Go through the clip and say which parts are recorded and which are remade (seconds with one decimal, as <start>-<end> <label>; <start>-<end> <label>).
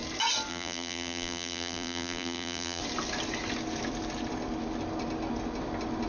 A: 0.0-0.5 recorded; 0.5-2.8 remade; 2.8-6.1 recorded